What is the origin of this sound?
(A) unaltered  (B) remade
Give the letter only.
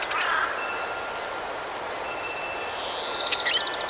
A